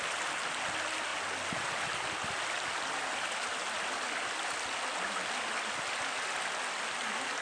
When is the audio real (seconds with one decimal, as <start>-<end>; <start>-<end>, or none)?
0.0-7.4